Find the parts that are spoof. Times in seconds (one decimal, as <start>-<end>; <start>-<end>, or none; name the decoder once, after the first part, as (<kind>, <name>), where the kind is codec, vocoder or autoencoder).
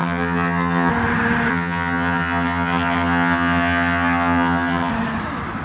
0.0-0.9 (vocoder, HiFi-GAN); 1.5-4.9